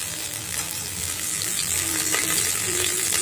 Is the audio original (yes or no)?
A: no